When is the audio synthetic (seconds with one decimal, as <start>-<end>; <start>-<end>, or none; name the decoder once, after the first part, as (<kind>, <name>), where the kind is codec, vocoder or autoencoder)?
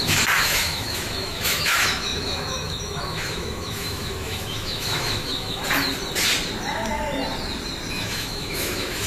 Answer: 0.0-5.6 (autoencoder, DAC-VAE); 7.9-9.1